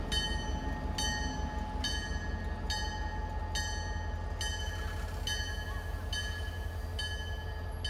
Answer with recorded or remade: recorded